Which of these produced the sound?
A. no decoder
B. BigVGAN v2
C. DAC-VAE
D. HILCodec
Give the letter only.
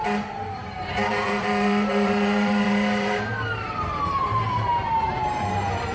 B